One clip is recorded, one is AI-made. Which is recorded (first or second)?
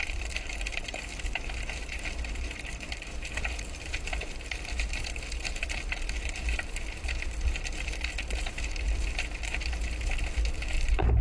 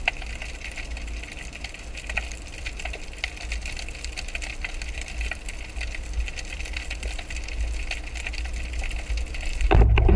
second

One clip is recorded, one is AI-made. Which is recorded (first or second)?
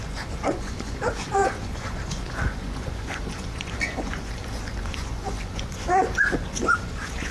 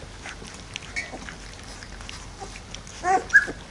second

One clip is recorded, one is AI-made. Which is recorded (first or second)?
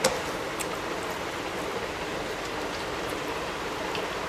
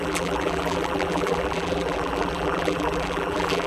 first